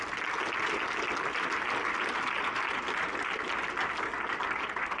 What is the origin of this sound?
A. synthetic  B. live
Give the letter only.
B